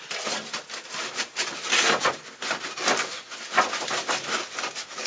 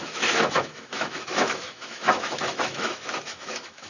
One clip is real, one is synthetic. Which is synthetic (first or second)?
second